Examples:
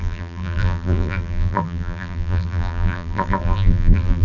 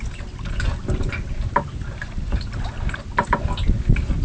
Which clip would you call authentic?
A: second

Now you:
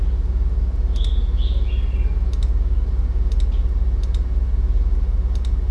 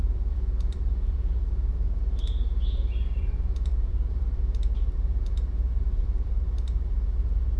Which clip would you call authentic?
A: first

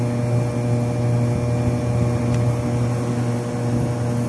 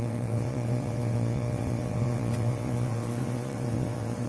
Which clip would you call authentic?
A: first